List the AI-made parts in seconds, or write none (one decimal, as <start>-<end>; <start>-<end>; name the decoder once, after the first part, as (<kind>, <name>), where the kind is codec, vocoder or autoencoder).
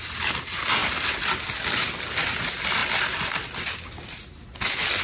none